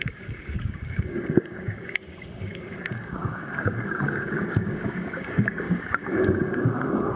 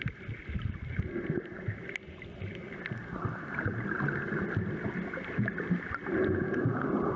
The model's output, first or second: first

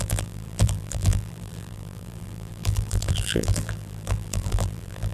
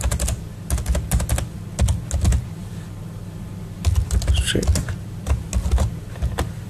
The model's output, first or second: first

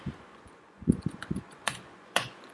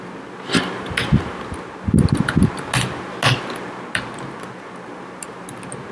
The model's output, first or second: first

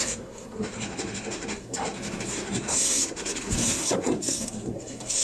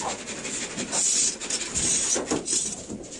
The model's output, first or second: first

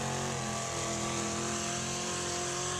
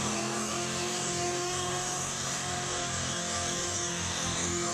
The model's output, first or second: second